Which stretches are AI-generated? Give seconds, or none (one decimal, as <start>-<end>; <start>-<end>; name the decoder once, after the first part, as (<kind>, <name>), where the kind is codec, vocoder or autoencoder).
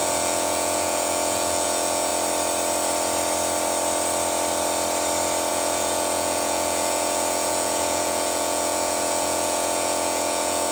0.0-2.1 (vocoder, Vocos); 5.5-10.7